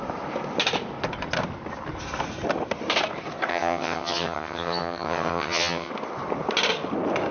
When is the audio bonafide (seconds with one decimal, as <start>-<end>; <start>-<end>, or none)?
0.0-3.5; 5.9-7.3